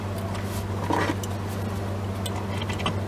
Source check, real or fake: real